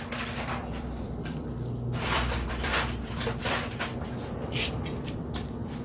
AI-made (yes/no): yes